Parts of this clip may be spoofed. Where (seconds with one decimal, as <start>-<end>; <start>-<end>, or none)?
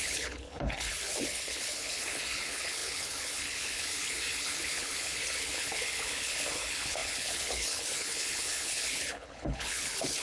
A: 0.0-10.2